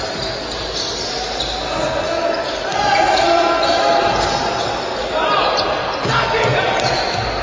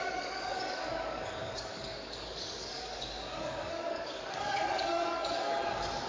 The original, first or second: first